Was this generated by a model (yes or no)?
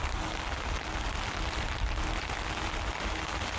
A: no